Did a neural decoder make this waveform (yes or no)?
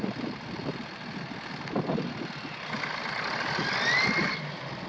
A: no